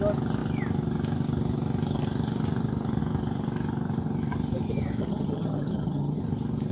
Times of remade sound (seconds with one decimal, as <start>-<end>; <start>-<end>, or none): 5.0-6.2